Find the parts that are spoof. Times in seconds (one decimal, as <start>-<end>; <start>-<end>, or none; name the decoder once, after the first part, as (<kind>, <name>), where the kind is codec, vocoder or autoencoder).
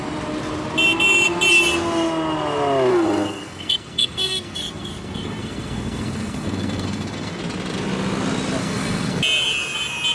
2.9-7.4 (codec, SNAC); 8.6-9.2